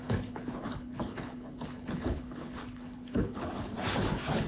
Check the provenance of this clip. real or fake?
fake